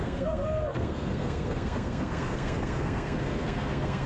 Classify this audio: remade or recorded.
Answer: remade